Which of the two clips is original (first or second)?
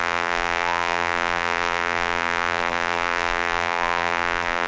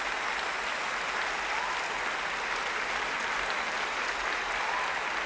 second